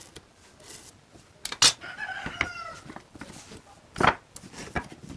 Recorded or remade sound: recorded